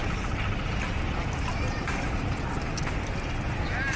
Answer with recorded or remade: recorded